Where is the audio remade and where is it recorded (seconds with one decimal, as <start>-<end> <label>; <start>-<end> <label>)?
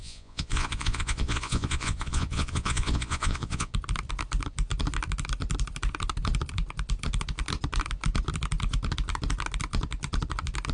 0.0-3.7 remade; 3.7-10.7 recorded